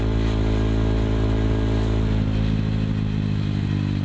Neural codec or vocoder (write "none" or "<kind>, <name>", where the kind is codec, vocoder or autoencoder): none